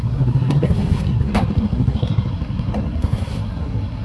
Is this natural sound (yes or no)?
no